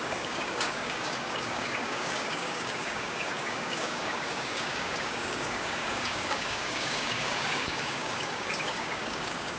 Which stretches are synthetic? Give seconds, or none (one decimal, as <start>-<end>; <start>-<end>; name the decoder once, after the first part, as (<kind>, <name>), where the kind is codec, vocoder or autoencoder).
0.0-9.6 (codec, DAC)